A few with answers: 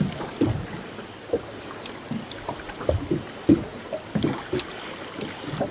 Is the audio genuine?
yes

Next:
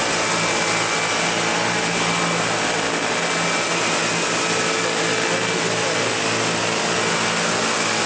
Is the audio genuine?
yes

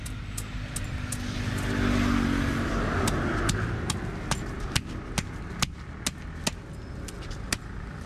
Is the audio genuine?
yes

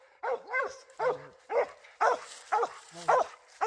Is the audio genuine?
yes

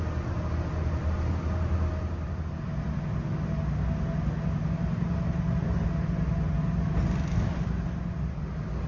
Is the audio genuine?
yes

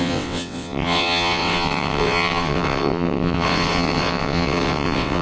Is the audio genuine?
no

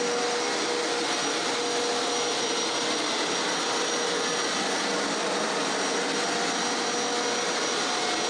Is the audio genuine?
yes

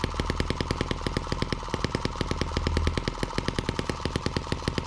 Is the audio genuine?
yes